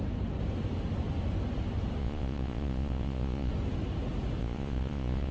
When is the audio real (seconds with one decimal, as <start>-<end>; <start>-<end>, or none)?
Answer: 0.0-2.0; 3.5-4.4